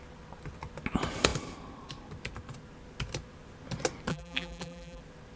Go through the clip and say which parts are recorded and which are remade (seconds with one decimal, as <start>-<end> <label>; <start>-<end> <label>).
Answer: 0.0-4.1 recorded; 4.1-5.0 remade; 5.0-5.4 recorded

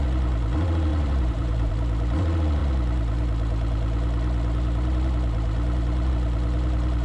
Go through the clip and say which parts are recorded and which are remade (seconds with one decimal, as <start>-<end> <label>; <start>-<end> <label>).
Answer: 0.0-0.9 recorded; 0.9-1.7 remade; 1.7-7.0 recorded

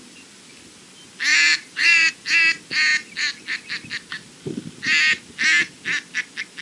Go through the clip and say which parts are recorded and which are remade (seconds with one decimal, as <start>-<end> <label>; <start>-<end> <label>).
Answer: 0.0-1.3 recorded; 1.3-2.1 remade; 2.1-6.6 recorded

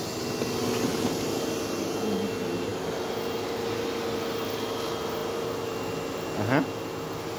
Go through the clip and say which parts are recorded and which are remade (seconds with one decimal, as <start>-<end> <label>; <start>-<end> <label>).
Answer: 0.0-0.9 recorded; 0.9-1.4 remade; 1.4-7.4 recorded

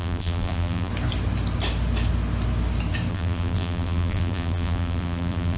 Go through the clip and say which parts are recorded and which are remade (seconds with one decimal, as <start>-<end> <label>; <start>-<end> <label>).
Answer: 0.0-0.9 remade; 0.9-3.1 recorded; 3.1-5.6 remade

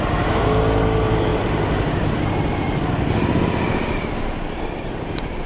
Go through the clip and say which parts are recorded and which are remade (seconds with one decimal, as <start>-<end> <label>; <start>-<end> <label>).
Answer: 0.0-5.5 recorded

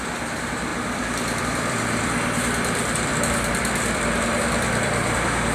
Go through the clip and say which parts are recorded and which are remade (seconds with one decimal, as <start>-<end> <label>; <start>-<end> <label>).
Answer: 0.0-0.7 remade; 0.7-1.4 recorded; 1.4-3.1 remade; 3.1-3.9 recorded; 3.9-5.5 remade

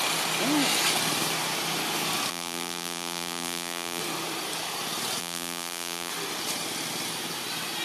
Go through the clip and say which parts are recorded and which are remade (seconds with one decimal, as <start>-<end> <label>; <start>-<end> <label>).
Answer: 0.0-2.3 recorded; 2.3-4.0 remade; 4.0-5.2 recorded; 5.2-6.1 remade; 6.1-7.8 recorded